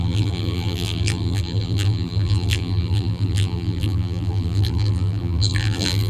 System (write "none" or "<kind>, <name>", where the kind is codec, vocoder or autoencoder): vocoder, BigVGAN v2